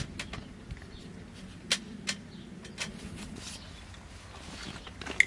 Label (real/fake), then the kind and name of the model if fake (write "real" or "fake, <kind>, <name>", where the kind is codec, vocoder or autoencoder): real